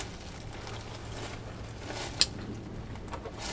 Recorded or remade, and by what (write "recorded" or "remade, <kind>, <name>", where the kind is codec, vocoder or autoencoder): recorded